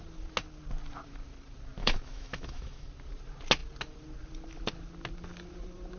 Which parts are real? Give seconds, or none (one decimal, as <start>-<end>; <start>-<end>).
0.0-1.8; 2.9-6.0